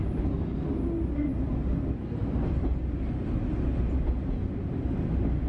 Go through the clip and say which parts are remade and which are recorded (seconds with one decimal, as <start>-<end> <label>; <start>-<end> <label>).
0.0-5.5 recorded